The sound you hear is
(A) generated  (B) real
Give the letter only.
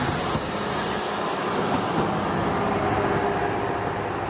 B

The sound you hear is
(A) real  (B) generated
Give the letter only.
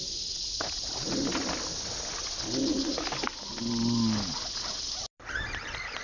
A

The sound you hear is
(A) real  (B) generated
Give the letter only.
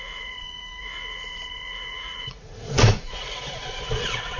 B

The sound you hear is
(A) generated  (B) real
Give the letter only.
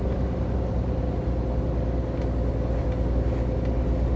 B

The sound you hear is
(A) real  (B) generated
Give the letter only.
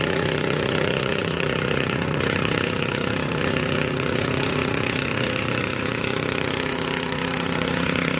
B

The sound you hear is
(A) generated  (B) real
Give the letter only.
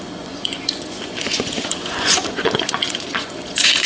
A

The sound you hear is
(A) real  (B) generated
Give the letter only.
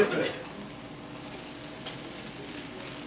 A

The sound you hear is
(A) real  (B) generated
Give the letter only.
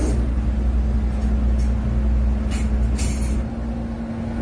A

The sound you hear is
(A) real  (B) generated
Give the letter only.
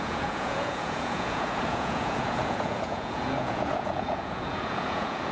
B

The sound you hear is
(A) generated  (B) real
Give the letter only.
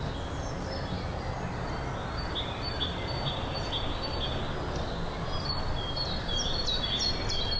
B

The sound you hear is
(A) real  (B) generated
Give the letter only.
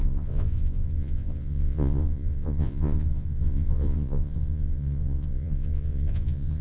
B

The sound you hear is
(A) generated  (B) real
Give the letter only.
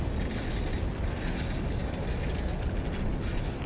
B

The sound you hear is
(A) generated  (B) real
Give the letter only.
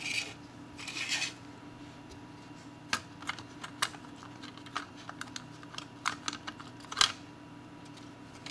B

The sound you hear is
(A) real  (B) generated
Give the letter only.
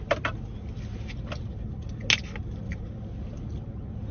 A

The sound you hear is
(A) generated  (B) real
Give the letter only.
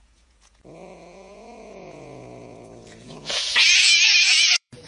A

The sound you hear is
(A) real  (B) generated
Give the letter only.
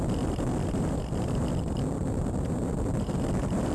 A